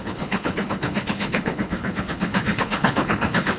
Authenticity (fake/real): fake